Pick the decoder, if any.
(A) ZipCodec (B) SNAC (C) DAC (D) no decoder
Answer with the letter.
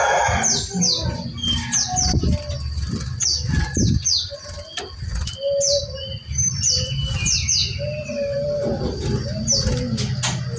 D